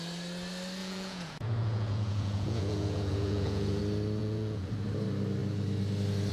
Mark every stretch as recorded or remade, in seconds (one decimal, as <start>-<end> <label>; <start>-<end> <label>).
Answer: 0.0-0.8 recorded; 0.8-3.8 remade; 3.8-4.2 recorded; 4.2-4.7 remade; 4.7-6.3 recorded